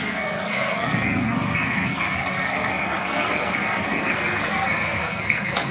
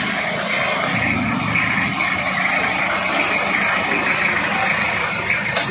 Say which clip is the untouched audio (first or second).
second